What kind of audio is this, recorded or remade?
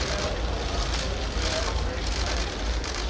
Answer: recorded